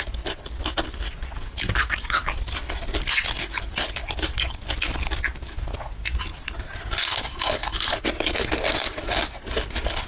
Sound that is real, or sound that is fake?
real